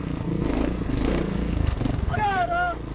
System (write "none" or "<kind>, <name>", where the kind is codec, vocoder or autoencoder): codec, SNAC